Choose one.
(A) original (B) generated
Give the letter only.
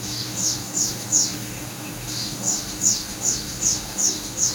B